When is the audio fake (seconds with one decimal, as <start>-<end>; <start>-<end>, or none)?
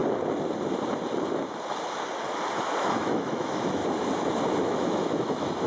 2.7-3.8; 4.6-5.7